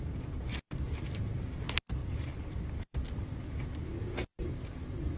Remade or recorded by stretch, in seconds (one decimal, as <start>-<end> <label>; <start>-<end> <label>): 0.0-0.5 recorded; 0.5-1.4 remade; 1.4-2.0 recorded; 2.0-2.7 remade; 2.7-4.3 recorded; 4.3-5.2 remade